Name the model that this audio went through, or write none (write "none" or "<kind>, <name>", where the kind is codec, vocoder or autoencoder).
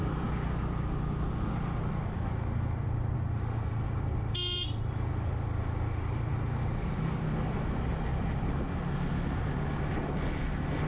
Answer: none